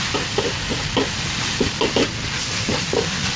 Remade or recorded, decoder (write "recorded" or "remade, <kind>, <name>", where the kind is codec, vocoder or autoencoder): recorded